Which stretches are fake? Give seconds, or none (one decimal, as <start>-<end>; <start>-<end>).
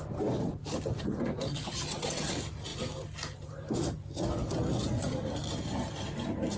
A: 1.5-2.3